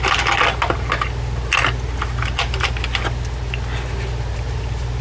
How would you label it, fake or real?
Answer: real